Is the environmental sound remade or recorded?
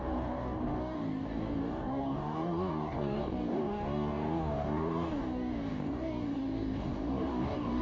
remade